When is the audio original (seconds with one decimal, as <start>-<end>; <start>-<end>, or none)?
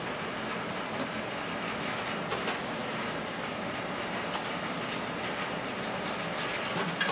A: 0.0-7.1